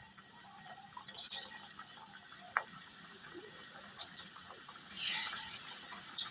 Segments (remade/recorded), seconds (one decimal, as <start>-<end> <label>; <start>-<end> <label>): 0.0-2.7 recorded; 2.7-6.3 remade